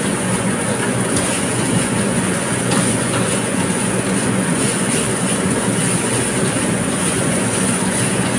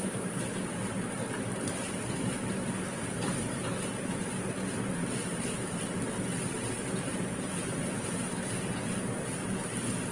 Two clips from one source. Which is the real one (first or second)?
second